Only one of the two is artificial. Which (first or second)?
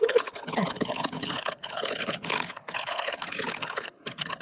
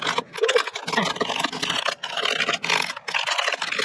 first